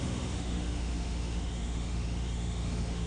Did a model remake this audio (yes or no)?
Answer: yes